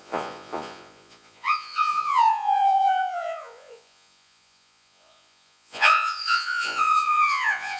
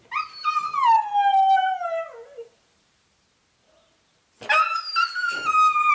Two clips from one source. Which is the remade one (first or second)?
first